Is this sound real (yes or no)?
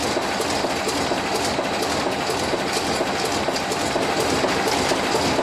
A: yes